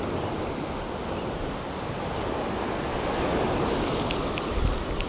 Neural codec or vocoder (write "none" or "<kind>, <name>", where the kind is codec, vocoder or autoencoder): none